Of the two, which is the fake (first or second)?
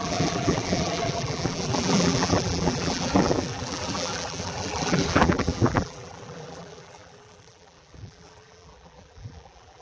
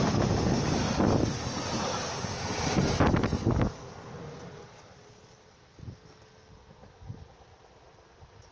first